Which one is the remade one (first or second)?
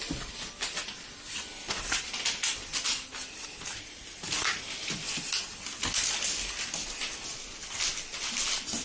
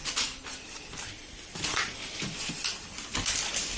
second